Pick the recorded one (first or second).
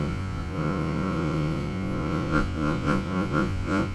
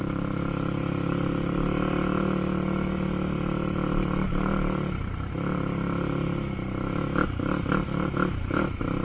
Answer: second